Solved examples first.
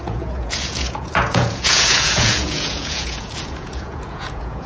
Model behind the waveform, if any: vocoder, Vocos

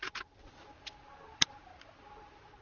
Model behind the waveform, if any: none